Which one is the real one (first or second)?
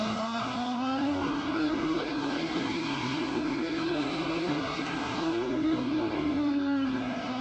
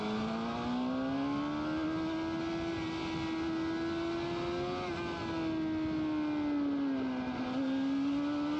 second